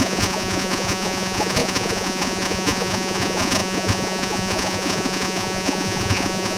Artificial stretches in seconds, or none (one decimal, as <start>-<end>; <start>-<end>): 0.0-6.6